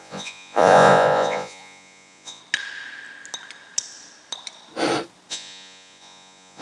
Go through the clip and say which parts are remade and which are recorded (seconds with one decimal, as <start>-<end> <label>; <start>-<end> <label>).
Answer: 0.0-2.4 remade; 2.4-5.3 recorded; 5.3-6.6 remade